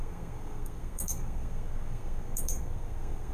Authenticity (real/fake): fake